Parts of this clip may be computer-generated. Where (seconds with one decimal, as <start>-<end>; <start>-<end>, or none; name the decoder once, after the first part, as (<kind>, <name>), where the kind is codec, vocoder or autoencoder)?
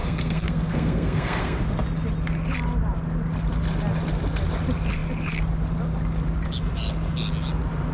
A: 0.0-1.6 (codec, SNAC)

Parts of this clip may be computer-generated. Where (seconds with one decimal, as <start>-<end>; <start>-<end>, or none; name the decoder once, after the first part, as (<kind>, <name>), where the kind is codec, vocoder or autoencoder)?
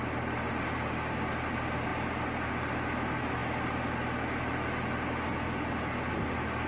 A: 1.9-2.5 (vocoder, BigVGAN v2)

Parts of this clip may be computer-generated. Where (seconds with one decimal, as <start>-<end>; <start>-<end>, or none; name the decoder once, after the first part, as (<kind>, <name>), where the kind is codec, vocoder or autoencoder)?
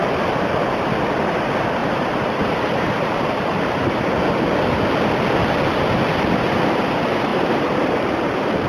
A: 1.8-4.0 (vocoder, BigVGAN v2); 7.3-8.7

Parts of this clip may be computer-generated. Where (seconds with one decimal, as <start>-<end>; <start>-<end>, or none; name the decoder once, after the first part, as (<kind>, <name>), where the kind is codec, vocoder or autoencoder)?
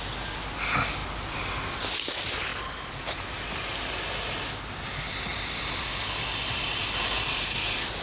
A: 2.5-3.0 (vocoder, BigVGAN v2); 5.3-6.0